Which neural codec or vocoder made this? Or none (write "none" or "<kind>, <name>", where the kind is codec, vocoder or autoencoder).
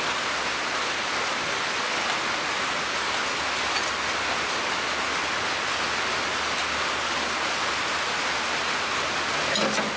none